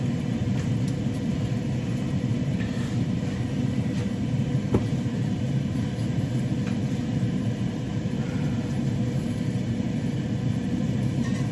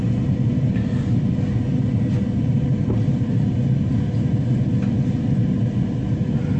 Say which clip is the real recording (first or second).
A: second